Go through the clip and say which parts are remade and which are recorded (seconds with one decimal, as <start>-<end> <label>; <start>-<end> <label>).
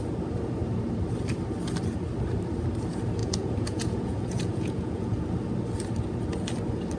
0.0-3.2 recorded; 3.2-5.2 remade; 5.2-7.0 recorded